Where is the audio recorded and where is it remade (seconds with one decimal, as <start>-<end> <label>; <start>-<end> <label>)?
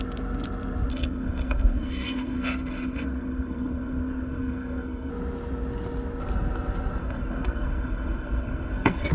0.0-0.9 recorded; 0.9-5.1 remade; 5.1-7.0 recorded; 7.0-9.1 remade